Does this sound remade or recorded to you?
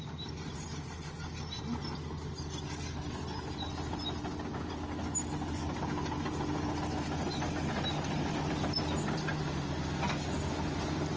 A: recorded